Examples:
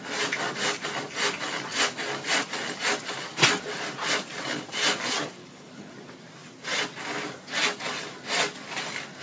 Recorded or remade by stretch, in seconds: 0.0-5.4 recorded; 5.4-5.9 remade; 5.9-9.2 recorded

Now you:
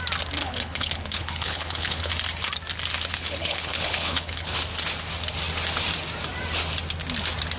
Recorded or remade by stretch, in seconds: 0.0-0.4 recorded; 0.4-2.1 remade; 2.1-3.1 recorded; 3.1-4.6 remade; 4.6-7.6 recorded

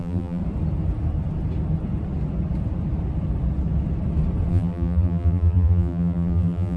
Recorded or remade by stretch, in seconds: 0.0-0.4 remade; 0.4-4.5 recorded; 4.5-6.8 remade